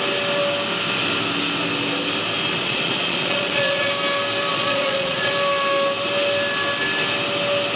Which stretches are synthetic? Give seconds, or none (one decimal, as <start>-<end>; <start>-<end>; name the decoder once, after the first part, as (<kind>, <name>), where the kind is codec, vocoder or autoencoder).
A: 2.6-3.9 (vocoder, Vocos); 4.5-5.3